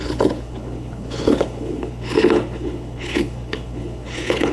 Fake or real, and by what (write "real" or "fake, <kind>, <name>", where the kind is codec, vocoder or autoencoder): fake, codec, HILCodec